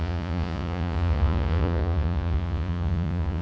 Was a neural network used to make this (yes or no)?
yes